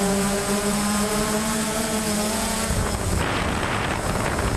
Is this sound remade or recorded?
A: remade